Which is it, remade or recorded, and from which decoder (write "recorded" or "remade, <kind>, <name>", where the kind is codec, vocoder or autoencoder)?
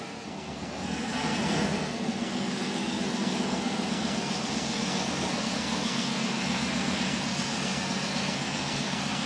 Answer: remade, codec, SNAC